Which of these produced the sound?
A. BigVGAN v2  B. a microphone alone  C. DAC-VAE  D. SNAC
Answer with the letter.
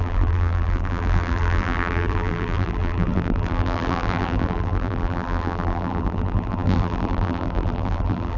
A